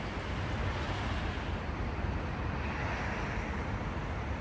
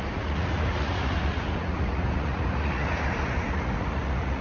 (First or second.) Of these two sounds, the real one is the first